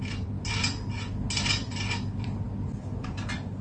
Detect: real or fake real